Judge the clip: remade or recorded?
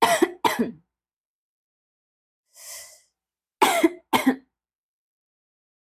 recorded